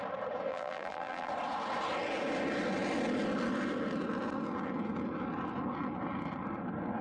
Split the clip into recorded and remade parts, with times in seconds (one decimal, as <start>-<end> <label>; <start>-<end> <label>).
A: 0.0-0.5 recorded; 0.5-1.3 remade; 1.3-7.0 recorded